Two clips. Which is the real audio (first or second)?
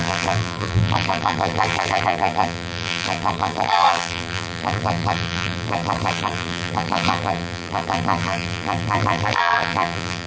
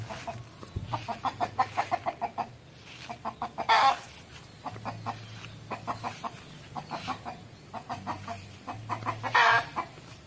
second